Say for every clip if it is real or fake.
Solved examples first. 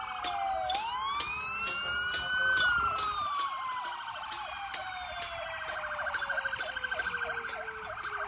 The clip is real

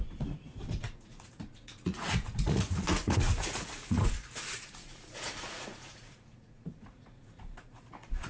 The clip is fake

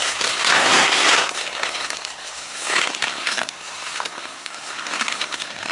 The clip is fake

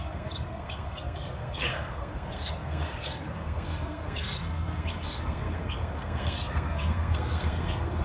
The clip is fake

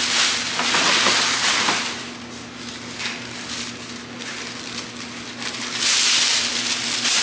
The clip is real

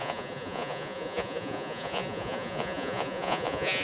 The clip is fake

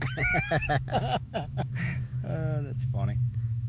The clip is fake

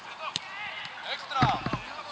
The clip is real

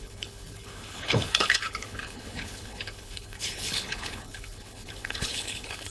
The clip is fake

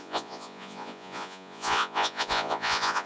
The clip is fake